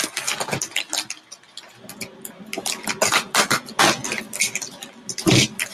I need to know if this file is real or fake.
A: real